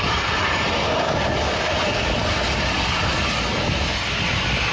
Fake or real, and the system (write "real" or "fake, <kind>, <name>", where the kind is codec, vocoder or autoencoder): real